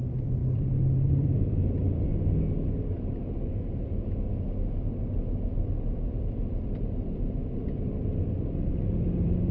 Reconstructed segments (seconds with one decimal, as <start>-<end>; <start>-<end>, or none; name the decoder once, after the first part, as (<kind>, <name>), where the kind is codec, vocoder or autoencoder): 0.0-2.1 (vocoder, BigVGAN v2); 6.3-9.5